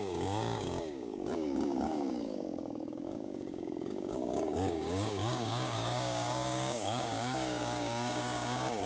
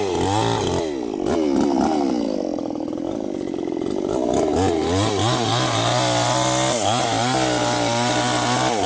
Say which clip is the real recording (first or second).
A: second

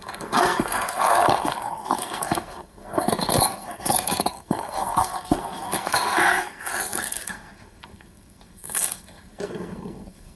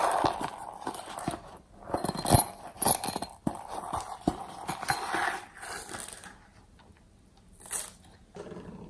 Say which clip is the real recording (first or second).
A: second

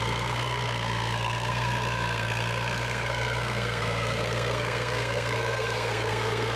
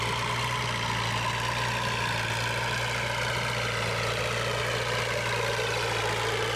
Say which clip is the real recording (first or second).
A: second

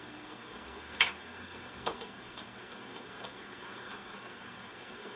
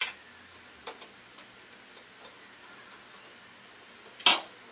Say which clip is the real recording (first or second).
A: second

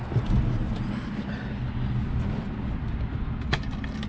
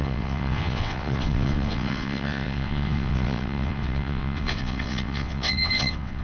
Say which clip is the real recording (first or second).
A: first